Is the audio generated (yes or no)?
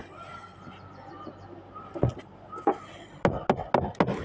no